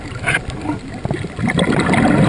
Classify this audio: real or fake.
fake